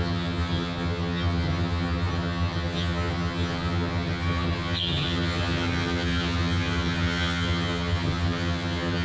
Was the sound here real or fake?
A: fake